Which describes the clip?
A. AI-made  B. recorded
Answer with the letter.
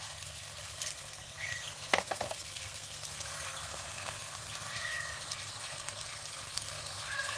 A